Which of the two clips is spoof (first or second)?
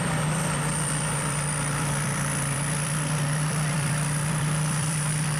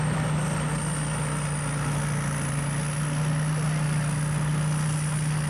first